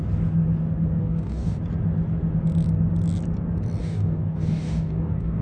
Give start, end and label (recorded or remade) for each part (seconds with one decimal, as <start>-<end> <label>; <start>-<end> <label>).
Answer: 0.0-1.0 recorded; 1.0-1.6 remade; 1.6-3.8 recorded; 3.8-5.4 remade